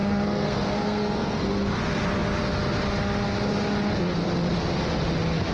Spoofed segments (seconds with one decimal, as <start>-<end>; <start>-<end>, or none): 0.0-1.8